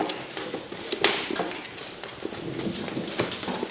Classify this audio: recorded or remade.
recorded